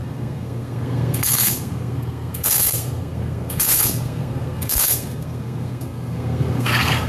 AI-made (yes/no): yes